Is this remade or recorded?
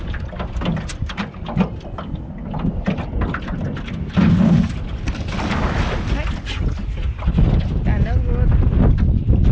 recorded